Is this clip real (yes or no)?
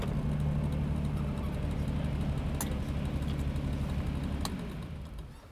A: yes